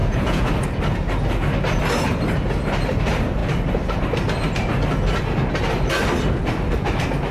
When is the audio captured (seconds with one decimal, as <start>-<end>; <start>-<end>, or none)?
0.5-7.3